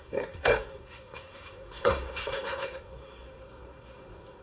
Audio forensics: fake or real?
fake